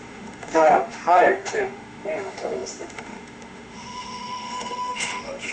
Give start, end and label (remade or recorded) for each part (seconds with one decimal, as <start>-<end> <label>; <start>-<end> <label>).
0.0-5.5 remade